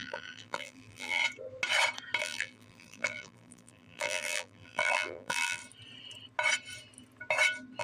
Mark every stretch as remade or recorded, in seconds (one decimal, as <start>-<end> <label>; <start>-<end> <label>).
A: 0.0-1.2 remade; 1.2-2.2 recorded; 2.2-5.6 remade; 5.6-7.8 recorded